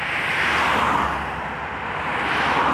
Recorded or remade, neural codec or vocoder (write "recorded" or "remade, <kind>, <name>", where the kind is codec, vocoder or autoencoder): recorded